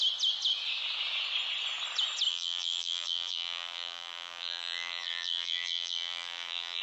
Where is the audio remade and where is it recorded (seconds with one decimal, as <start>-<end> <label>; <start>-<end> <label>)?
0.0-2.3 recorded; 2.3-6.8 remade